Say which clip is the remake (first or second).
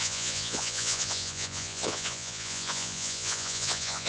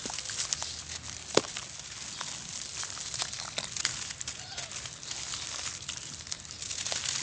first